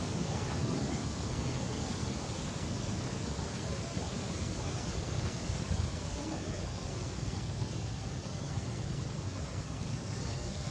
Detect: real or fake fake